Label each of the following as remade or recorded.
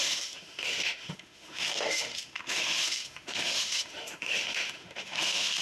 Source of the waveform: remade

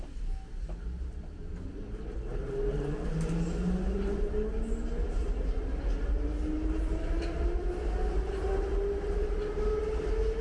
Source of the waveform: recorded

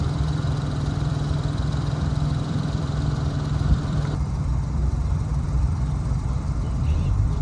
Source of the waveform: remade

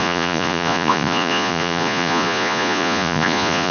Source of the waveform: remade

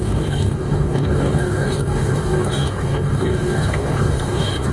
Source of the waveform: remade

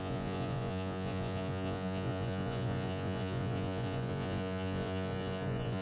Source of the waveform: remade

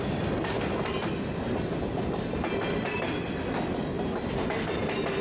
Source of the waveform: recorded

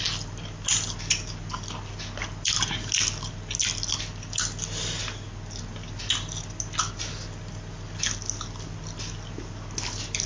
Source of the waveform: recorded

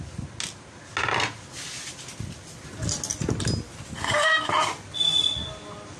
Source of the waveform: recorded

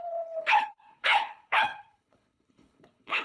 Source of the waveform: remade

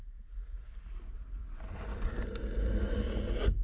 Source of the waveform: recorded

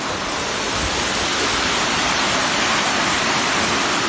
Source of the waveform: remade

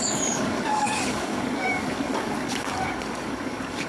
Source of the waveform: remade